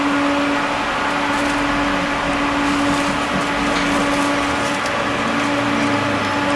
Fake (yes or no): no